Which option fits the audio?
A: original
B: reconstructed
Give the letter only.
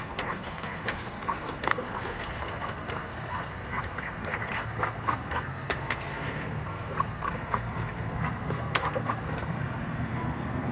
B